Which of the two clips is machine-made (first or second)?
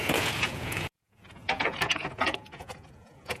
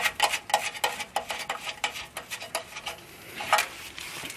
first